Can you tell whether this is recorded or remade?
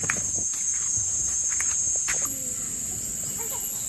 recorded